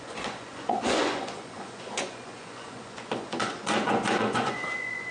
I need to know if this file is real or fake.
fake